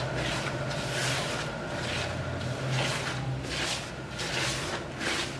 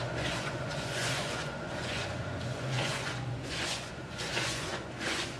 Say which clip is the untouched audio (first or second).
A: first